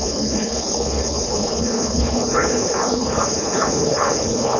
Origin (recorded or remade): remade